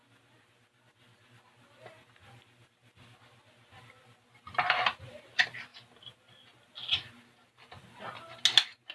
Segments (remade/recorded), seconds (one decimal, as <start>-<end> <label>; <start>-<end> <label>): 0.0-8.9 recorded